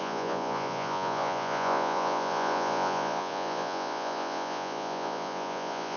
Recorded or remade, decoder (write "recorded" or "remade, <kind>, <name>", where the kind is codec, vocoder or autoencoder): remade, vocoder, Vocos